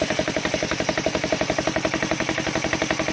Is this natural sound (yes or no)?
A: yes